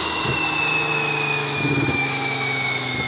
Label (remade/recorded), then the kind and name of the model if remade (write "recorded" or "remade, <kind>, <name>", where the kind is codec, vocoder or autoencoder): remade, autoencoder, DAC-VAE